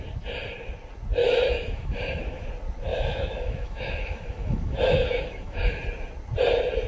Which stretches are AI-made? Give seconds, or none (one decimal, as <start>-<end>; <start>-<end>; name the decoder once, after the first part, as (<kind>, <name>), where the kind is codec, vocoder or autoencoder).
1.2-2.5 (autoencoder, DAC-VAE); 2.9-5.8